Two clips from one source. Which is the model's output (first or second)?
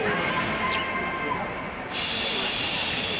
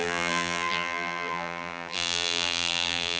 second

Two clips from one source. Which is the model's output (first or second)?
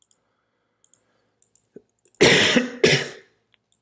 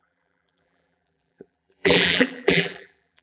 second